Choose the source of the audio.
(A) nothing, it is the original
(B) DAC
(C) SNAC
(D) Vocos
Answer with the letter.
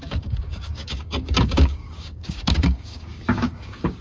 B